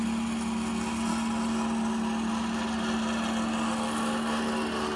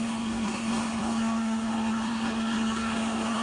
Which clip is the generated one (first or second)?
second